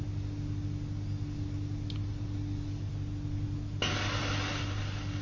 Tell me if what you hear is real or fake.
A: real